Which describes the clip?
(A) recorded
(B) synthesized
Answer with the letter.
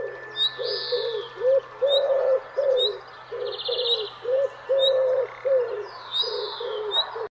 A